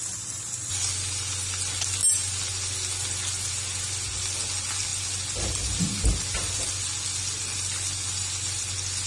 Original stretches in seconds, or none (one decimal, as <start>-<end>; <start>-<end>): 0.0-9.1

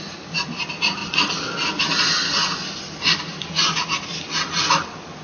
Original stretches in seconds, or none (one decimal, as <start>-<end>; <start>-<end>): 0.0-5.2